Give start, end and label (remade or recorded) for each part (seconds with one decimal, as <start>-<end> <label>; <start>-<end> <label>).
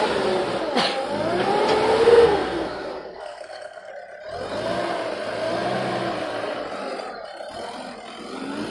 0.0-2.0 recorded; 2.0-3.9 remade; 3.9-8.7 recorded